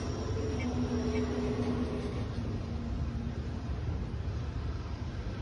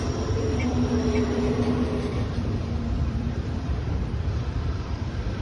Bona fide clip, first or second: first